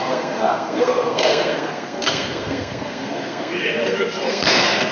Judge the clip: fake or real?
fake